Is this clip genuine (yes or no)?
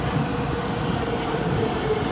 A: yes